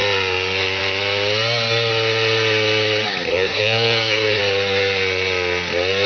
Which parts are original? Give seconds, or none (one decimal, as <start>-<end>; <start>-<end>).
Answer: 0.0-3.3; 4.4-6.1